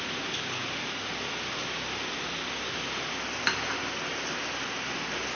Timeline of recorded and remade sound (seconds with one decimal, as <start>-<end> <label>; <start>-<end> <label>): 0.0-5.3 recorded